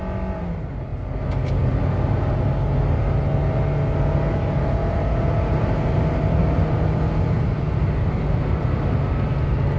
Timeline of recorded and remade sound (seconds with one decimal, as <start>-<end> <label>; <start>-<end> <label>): 0.0-9.8 recorded

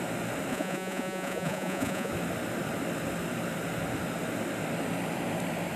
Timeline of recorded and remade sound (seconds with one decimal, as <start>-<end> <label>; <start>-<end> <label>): 0.0-0.5 recorded; 0.5-2.1 remade; 2.1-5.8 recorded

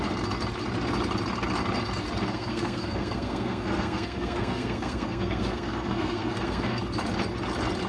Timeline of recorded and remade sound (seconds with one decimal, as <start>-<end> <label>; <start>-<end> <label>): 0.0-2.3 recorded; 2.3-6.8 remade; 6.8-7.9 recorded

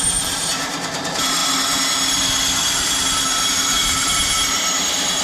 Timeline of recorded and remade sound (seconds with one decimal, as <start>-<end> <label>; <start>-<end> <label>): 0.0-1.4 remade; 1.4-3.4 recorded; 3.4-5.2 remade

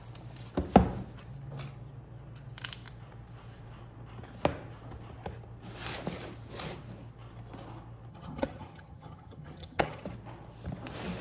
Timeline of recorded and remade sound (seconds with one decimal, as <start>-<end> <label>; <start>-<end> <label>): 0.0-8.1 recorded; 8.1-10.0 remade; 10.0-11.2 recorded